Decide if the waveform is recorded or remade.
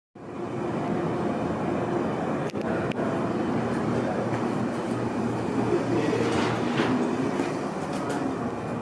recorded